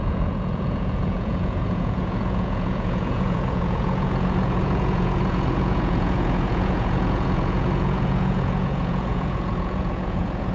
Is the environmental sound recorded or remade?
remade